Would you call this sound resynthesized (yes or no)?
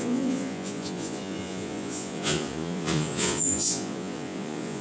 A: yes